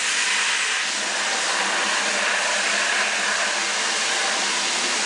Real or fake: real